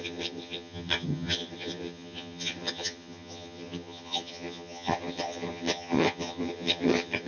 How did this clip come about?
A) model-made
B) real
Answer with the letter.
A